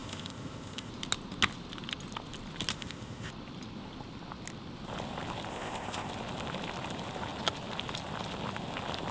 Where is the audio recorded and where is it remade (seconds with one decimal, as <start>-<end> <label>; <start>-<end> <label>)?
0.0-0.9 remade; 0.9-2.7 recorded; 2.7-3.3 remade; 3.3-5.5 recorded; 5.5-6.1 remade; 6.1-9.1 recorded